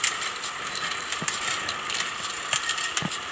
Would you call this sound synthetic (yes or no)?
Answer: yes